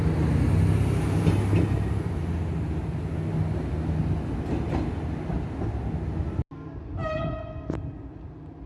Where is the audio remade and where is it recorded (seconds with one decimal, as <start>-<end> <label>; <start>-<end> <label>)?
0.0-8.7 recorded